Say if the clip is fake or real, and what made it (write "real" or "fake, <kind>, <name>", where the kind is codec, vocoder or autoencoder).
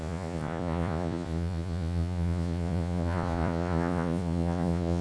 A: fake, vocoder, Vocos